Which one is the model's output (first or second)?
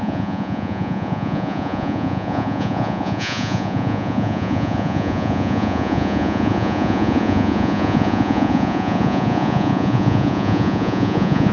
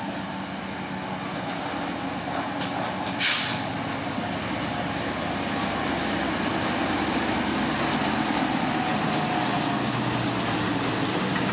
first